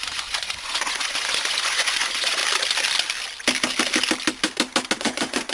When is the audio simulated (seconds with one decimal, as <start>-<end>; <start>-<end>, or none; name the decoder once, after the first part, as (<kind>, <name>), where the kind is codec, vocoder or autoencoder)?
0.0-2.4 (vocoder, Vocos); 5.0-5.5